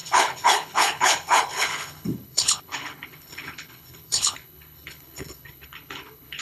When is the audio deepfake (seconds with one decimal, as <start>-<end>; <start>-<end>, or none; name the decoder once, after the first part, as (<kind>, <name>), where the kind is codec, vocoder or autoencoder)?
0.0-6.4 (codec, HILCodec)